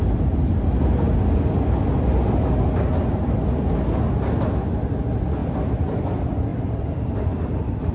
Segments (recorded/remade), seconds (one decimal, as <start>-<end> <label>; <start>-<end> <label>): 0.0-5.4 recorded; 5.4-6.0 remade; 6.0-6.5 recorded; 6.5-7.9 remade